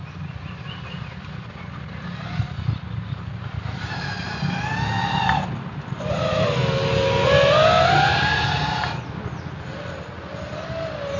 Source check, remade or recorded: recorded